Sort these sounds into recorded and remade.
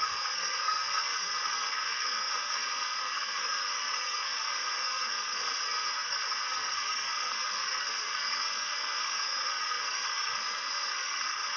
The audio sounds remade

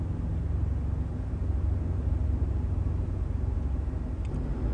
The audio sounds recorded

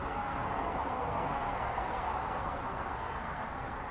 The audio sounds remade